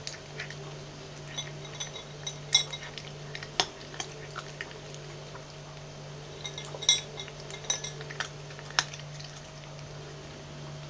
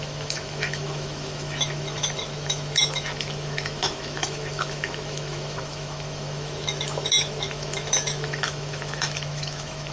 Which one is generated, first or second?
second